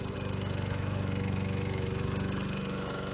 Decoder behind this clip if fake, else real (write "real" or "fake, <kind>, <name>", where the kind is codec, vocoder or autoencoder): fake, autoencoder, DAC-VAE